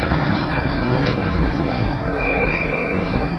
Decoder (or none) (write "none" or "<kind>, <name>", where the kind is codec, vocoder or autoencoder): codec, SNAC